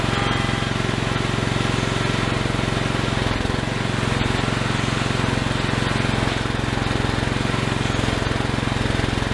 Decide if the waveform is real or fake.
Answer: real